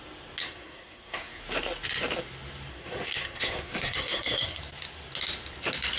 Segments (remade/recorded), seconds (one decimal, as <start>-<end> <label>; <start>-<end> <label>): 0.0-0.4 recorded; 0.4-1.4 remade; 1.4-2.7 recorded; 2.7-4.6 remade; 4.6-6.0 recorded